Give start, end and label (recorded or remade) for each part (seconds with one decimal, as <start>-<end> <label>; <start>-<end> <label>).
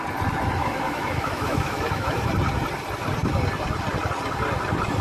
0.0-0.6 recorded; 0.6-2.3 remade; 2.3-5.0 recorded